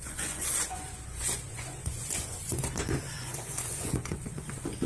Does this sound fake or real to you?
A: fake